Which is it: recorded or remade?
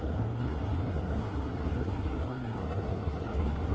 remade